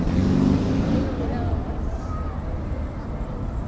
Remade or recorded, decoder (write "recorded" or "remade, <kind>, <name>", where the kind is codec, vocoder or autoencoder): recorded